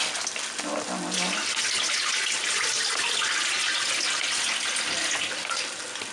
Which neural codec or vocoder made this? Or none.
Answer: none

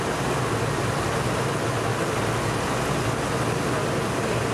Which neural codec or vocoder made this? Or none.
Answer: none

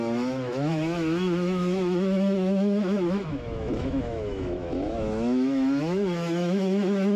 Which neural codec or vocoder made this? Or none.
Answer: autoencoder, DAC-VAE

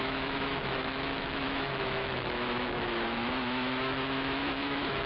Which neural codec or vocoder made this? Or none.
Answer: autoencoder, DAC-VAE